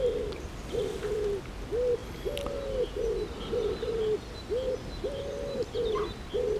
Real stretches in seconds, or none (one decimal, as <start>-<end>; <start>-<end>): 0.0-6.6

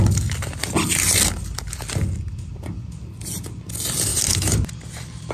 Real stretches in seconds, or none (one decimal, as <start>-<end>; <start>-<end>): 0.0-4.1; 4.7-5.3

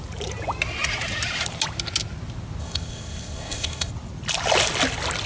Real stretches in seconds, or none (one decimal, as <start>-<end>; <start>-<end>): 0.0-2.6; 3.9-5.3

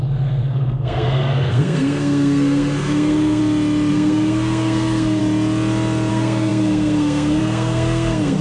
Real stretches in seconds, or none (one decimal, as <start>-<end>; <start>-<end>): 3.4-3.9; 5.2-6.1

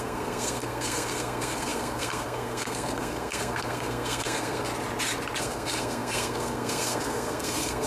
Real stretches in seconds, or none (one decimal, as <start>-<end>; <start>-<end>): 4.7-5.4